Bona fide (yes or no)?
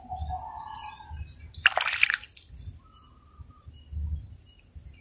yes